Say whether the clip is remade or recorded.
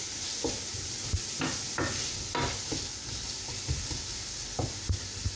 recorded